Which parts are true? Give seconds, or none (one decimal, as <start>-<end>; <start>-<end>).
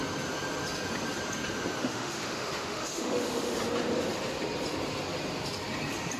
0.0-1.8; 3.6-6.2